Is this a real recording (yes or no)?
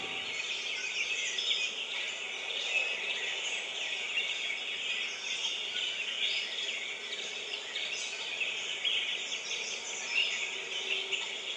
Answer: yes